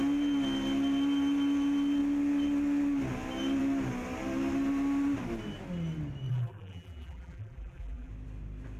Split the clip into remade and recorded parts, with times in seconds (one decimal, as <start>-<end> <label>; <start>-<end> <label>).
0.0-6.3 recorded; 6.3-8.1 remade; 8.1-8.8 recorded